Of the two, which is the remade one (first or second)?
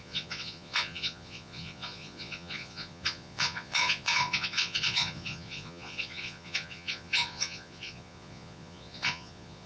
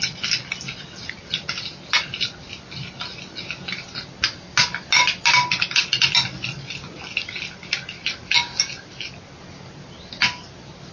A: first